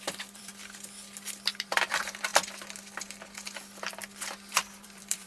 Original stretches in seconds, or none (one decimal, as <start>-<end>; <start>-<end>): 0.5-1.5; 2.3-4.6